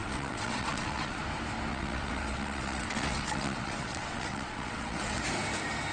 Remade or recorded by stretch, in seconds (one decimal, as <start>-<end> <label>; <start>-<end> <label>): 0.0-1.2 remade; 1.2-1.7 recorded; 1.7-5.2 remade; 5.2-5.9 recorded